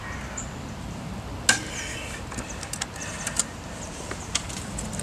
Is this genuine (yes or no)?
yes